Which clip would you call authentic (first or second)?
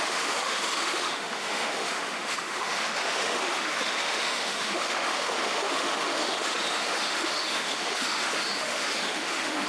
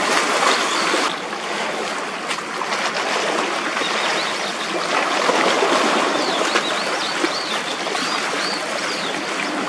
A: second